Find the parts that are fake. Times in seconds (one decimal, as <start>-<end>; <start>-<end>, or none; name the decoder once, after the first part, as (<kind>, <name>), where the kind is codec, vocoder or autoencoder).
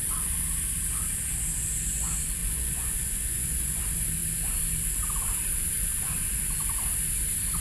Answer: 2.4-3.8 (vocoder, Vocos)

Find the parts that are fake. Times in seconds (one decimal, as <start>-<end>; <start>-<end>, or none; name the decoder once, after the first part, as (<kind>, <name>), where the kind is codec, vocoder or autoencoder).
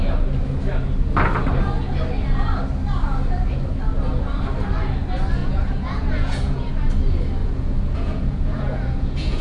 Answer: 5.4-6.7 (vocoder, Vocos); 7.4-9.4